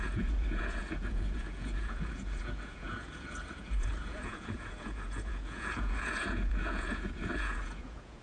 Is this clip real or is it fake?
fake